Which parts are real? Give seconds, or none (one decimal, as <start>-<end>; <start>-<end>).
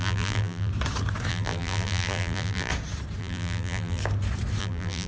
0.7-1.3; 2.7-3.2; 4.0-4.6